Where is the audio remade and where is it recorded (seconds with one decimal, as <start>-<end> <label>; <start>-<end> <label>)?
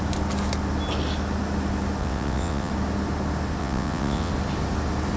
0.0-2.0 recorded; 2.0-2.7 remade; 2.7-3.6 recorded; 3.6-4.3 remade; 4.3-5.2 recorded